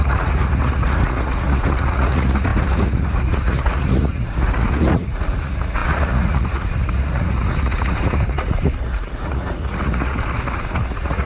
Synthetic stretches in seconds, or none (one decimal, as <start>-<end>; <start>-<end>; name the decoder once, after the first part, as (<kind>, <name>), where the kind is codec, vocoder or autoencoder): 0.0-11.3 (vocoder, Vocos)